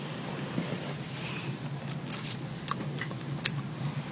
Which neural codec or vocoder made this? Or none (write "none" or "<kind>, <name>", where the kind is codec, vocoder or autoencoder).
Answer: none